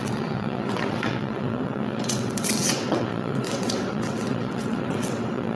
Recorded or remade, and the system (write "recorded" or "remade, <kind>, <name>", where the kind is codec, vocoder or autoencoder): remade, vocoder, WaveNeXt